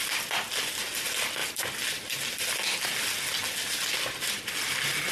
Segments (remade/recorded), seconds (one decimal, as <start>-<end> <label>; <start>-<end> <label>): 0.0-5.1 recorded